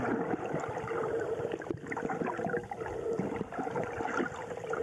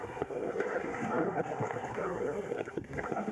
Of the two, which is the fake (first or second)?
second